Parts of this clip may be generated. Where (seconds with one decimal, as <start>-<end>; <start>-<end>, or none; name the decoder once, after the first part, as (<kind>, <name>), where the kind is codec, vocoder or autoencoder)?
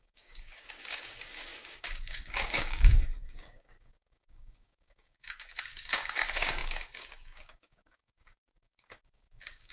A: 0.0-9.7 (codec, DAC)